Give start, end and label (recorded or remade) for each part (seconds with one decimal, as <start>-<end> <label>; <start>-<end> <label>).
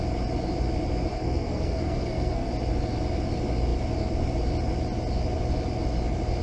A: 0.0-1.1 recorded; 1.1-2.5 remade; 2.5-6.4 recorded